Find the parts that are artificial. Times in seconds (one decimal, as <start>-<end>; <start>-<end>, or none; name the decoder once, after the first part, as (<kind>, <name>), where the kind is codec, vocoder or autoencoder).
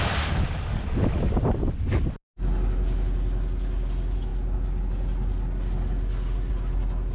none